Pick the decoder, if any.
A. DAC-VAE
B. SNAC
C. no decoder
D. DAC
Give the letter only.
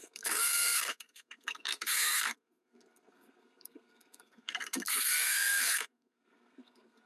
B